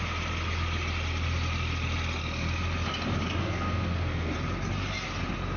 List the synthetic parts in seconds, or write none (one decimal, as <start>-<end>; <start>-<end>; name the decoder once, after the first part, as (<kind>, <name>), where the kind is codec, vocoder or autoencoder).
3.4-4.3 (codec, SNAC)